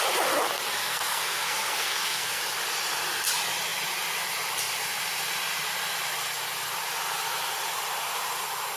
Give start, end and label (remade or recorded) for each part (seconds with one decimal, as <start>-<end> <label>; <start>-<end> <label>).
0.0-0.8 recorded; 0.8-2.4 remade; 2.4-8.8 recorded